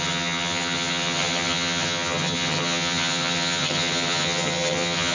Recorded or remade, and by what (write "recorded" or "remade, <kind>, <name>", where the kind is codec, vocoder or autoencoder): remade, vocoder, HiFi-GAN